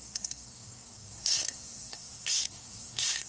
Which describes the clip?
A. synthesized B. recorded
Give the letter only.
A